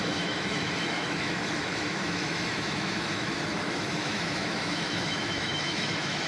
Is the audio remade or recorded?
remade